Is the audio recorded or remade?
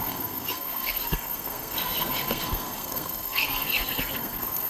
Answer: remade